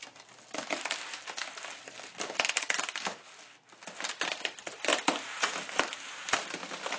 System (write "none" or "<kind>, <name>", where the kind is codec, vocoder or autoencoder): none